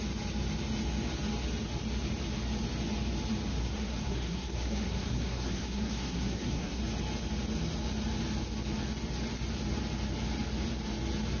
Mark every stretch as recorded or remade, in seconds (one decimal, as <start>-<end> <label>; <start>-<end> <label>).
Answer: 0.0-3.6 recorded; 3.6-6.8 remade; 6.8-11.4 recorded